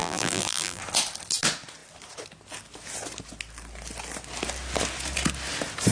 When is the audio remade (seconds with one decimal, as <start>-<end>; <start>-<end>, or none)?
0.0-0.8